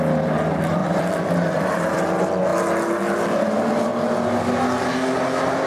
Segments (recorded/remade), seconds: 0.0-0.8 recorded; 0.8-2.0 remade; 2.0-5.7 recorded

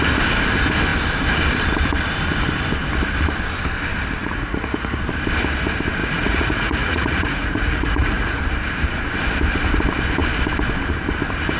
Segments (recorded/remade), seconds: 0.0-4.2 recorded; 4.2-5.0 remade; 5.0-6.0 recorded; 6.0-8.4 remade; 8.4-11.6 recorded